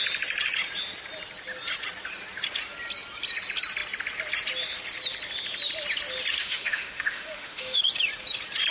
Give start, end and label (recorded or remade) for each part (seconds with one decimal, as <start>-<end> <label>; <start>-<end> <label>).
0.0-6.4 recorded; 6.4-7.8 remade; 7.8-8.7 recorded

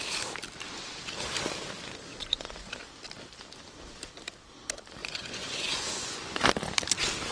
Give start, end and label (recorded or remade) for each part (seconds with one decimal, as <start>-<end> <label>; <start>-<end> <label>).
0.0-2.1 recorded; 2.1-2.7 remade; 2.7-5.0 recorded; 5.0-6.5 remade; 6.5-7.3 recorded

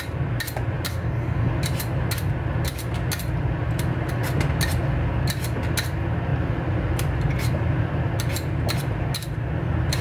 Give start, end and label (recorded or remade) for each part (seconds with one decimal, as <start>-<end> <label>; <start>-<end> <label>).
0.0-0.9 recorded; 0.9-1.5 remade; 1.5-10.0 recorded